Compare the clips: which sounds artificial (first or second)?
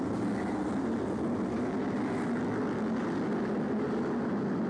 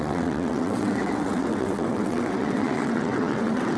second